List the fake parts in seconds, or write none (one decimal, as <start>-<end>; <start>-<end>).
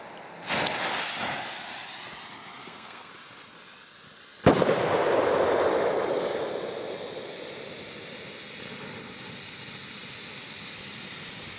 2.6-3.1